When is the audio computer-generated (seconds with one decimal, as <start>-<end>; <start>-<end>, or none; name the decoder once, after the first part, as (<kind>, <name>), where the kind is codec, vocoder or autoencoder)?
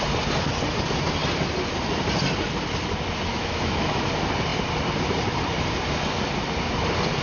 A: 3.3-4.1 (autoencoder, DAC-VAE)